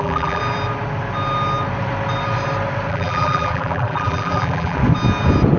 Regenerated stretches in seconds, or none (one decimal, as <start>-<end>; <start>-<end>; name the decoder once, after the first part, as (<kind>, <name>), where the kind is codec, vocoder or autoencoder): 0.0-0.4 (vocoder, BigVGAN v2); 2.9-4.8

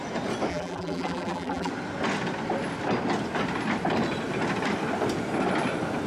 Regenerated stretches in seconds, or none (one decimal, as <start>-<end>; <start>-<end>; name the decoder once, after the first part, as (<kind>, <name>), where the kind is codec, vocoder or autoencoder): 0.5-1.7 (vocoder, BigVGAN v2)

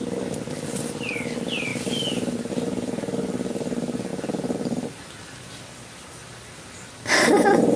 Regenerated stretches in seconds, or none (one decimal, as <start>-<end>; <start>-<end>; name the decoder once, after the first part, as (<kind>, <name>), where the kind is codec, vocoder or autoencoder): 4.1-5.4 (vocoder, BigVGAN v2)

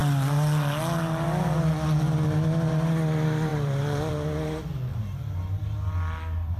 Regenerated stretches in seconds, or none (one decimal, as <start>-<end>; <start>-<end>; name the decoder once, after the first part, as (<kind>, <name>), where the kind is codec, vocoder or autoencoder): 3.5-4.1 (vocoder, BigVGAN v2); 4.9-5.6

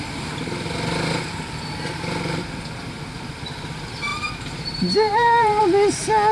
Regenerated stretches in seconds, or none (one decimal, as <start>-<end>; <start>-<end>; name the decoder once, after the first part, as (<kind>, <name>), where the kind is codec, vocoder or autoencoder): 2.4-3.4 (vocoder, BigVGAN v2); 4.1-5.6